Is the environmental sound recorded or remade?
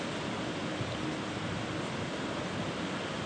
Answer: recorded